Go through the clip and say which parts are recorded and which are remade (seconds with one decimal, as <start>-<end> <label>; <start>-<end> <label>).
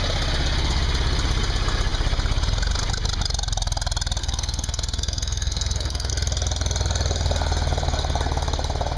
0.0-4.2 recorded; 4.2-6.1 remade; 6.1-9.0 recorded